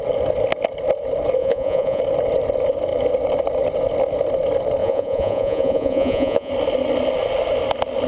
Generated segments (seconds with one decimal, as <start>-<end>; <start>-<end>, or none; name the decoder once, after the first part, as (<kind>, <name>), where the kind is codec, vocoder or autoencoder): 1.4-2.0 (vocoder, Vocos); 4.8-6.5

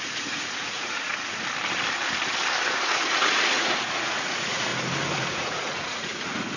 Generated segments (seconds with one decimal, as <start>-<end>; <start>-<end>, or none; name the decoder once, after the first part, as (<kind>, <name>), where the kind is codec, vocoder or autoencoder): 0.0-1.4 (vocoder, Vocos); 2.7-4.7; 5.3-6.6

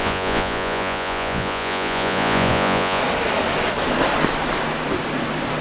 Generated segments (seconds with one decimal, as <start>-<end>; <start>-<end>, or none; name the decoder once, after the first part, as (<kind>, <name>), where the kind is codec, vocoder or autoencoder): 0.0-3.0 (vocoder, Vocos)

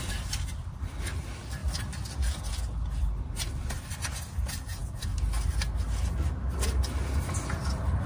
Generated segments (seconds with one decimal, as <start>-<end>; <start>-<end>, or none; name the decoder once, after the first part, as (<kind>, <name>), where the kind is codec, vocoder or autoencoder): none

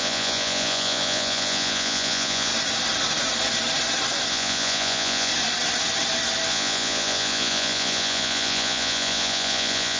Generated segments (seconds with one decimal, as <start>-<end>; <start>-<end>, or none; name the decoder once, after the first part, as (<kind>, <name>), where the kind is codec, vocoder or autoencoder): 0.0-2.5 (vocoder, Vocos); 4.3-5.3; 6.5-10.0

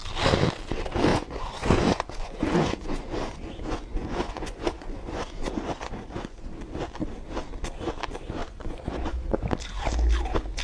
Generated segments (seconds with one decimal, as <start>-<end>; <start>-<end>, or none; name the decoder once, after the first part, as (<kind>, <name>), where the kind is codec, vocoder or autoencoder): 1.1-6.4 (vocoder, Vocos); 8.4-9.4